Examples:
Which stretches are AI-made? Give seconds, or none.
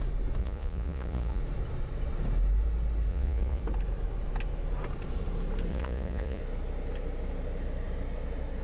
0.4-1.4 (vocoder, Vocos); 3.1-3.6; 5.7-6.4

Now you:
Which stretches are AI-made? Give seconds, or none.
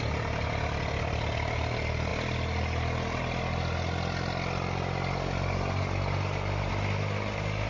none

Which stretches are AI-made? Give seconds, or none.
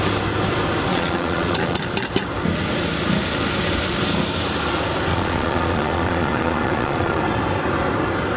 0.9-1.8 (vocoder, Vocos); 5.1-7.2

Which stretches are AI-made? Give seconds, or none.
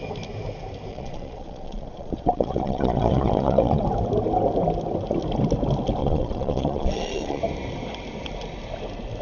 0.9-3.8 (vocoder, Vocos); 6.0-7.4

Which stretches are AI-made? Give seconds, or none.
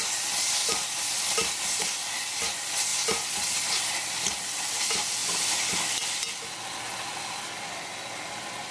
none